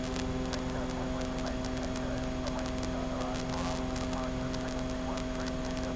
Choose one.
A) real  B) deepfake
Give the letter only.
A